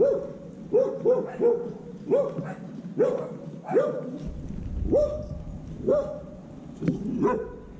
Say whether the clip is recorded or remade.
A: recorded